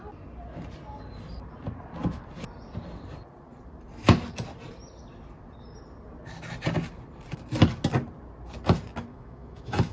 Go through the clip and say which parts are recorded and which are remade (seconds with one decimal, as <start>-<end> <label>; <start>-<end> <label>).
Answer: 0.0-9.1 recorded; 9.1-9.9 remade